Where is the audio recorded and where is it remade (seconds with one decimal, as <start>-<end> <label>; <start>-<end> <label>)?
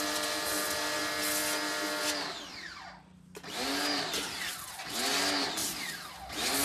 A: 0.0-6.6 recorded